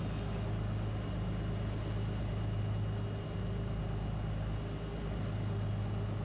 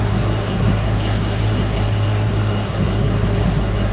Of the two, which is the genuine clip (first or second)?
first